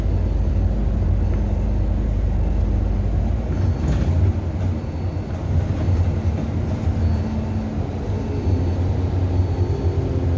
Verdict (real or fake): real